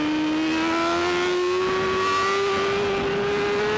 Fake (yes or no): no